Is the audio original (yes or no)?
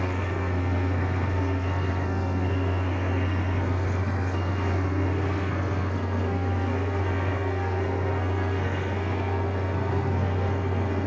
no